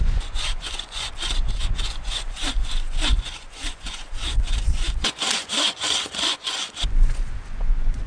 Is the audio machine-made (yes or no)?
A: yes